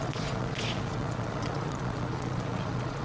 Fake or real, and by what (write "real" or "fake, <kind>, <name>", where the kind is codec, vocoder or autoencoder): fake, vocoder, Vocos